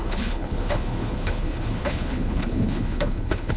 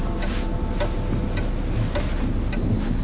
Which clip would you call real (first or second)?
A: second